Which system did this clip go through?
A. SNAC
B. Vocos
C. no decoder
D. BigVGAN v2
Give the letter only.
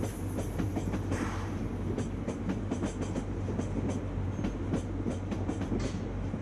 C